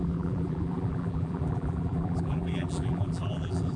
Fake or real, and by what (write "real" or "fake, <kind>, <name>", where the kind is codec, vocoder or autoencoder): fake, vocoder, BigVGAN v2